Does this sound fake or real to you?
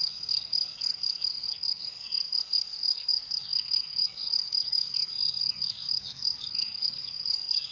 fake